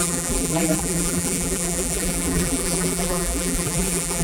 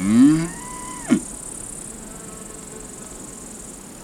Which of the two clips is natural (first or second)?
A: second